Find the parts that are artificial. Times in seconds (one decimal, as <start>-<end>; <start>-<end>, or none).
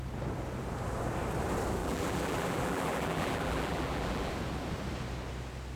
1.8-4.3